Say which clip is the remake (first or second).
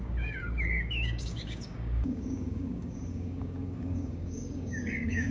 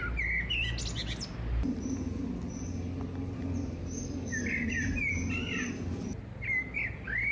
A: first